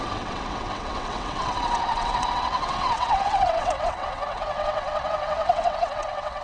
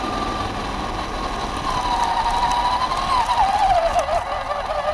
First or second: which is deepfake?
first